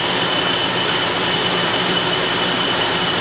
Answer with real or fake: fake